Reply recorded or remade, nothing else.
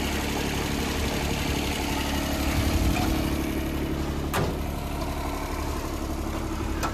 recorded